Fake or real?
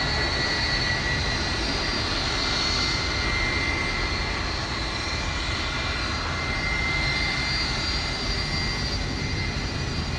real